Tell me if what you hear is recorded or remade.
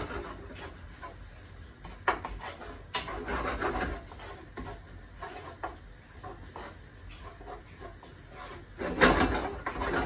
recorded